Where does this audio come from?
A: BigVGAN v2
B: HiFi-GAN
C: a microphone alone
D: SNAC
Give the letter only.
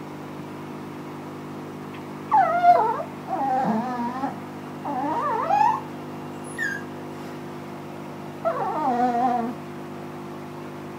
C